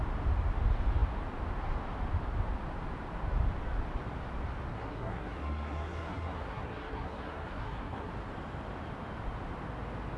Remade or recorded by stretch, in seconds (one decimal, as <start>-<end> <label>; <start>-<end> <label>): 0.0-4.7 recorded; 4.7-8.1 remade; 8.1-10.2 recorded